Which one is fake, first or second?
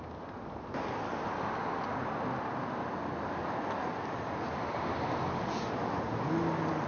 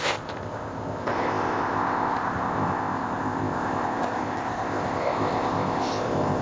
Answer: second